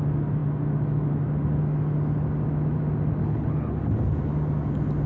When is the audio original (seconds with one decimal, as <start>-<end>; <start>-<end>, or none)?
0.0-3.2; 3.8-5.1